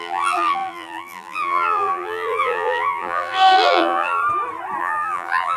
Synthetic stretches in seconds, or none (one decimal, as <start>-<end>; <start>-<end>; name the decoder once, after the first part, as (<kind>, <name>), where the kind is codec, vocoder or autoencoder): 0.0-4.2 (vocoder, BigVGAN v2); 4.8-5.6